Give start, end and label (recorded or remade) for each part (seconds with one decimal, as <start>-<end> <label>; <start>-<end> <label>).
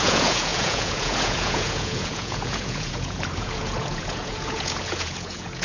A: 0.0-5.6 remade